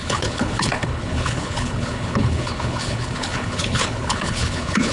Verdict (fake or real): fake